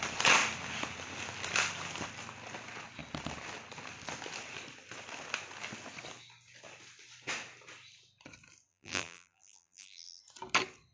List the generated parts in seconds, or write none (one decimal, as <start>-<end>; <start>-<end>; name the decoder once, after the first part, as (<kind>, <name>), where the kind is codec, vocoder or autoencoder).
8.7-10.2 (vocoder, BigVGAN v2)